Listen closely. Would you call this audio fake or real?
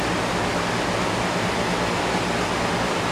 real